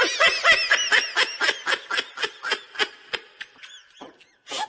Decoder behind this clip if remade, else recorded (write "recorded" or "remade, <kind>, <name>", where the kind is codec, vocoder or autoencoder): recorded